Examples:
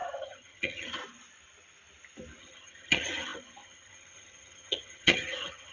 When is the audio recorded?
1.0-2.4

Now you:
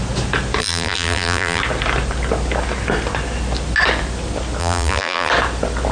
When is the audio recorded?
0.0-0.6; 1.6-4.6; 5.3-5.9